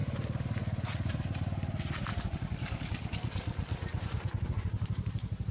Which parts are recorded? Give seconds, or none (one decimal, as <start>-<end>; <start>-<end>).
2.1-4.0